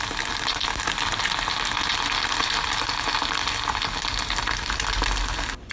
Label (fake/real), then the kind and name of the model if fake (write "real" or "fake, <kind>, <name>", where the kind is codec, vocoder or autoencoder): real